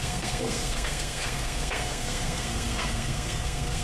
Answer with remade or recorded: remade